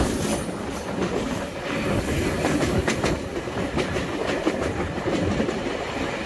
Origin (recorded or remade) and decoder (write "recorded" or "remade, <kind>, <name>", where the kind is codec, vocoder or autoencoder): recorded